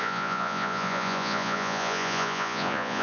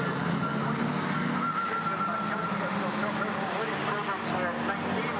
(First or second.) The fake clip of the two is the first